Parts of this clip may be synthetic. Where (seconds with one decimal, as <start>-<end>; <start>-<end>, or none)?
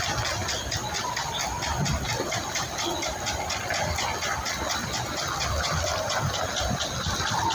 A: none